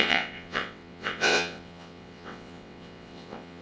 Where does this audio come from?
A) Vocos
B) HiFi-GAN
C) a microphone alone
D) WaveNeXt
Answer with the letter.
D